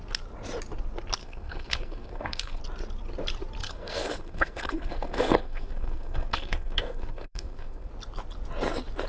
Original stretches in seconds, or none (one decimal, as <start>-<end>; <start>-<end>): 0.0-1.2; 2.6-3.6; 7.9-9.1

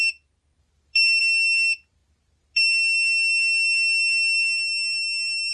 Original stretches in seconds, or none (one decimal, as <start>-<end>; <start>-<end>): 0.0-5.5

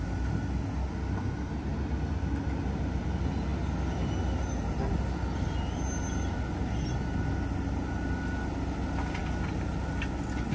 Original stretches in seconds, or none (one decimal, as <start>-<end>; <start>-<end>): 0.0-10.5